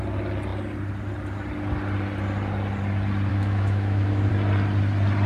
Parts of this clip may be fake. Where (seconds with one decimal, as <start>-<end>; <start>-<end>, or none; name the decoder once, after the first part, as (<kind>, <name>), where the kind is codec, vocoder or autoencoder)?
3.3-4.3 (autoencoder, DAC-VAE)